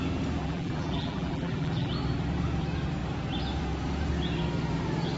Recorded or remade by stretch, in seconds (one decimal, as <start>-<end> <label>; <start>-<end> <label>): 0.0-0.4 recorded; 0.4-1.9 remade; 1.9-5.2 recorded